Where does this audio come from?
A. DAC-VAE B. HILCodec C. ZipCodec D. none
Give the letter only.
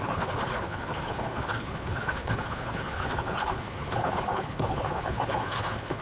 B